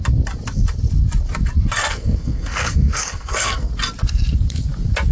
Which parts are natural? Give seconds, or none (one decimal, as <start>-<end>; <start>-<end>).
0.0-1.8; 3.7-5.1